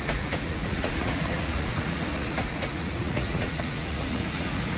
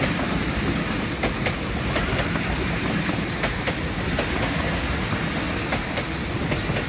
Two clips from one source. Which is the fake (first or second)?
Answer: first